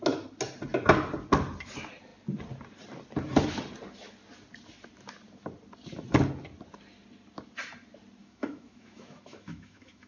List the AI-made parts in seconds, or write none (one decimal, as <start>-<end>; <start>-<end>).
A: 8.2-10.1